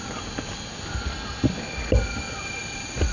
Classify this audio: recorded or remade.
recorded